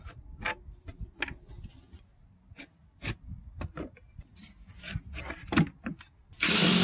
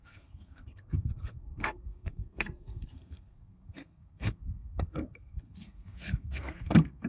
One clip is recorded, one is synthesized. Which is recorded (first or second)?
first